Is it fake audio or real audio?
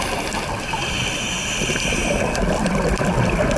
real